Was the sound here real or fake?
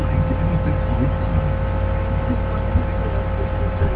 real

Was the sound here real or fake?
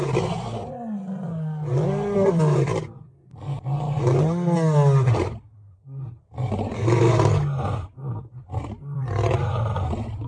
real